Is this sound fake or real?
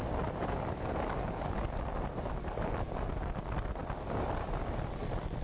real